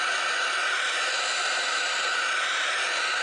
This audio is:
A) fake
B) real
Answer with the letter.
B